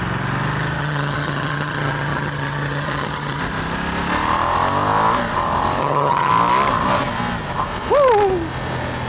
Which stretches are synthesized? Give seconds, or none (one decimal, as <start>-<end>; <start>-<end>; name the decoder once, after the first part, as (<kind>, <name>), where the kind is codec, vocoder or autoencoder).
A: 0.8-3.4 (vocoder, HiFi-GAN); 5.8-6.3